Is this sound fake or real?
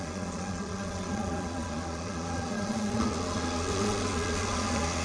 fake